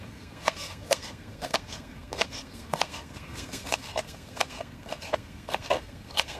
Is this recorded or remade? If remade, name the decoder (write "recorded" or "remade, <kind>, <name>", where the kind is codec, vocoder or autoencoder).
remade, codec, SNAC